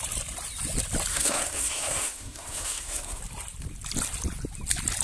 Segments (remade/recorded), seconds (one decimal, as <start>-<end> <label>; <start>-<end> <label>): 0.0-1.1 recorded; 1.1-3.2 remade; 3.2-5.0 recorded